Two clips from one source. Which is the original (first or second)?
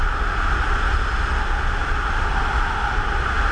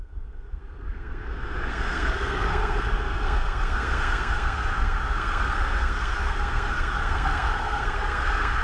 first